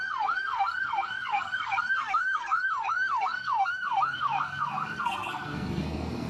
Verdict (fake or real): fake